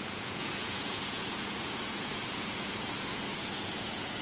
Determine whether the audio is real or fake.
fake